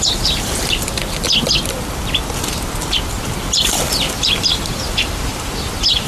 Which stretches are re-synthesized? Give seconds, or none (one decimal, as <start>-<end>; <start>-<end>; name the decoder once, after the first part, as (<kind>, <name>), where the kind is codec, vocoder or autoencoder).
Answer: 0.0-1.0 (vocoder, BigVGAN v2); 4.7-5.3